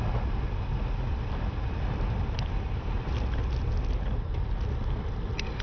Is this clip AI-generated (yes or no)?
no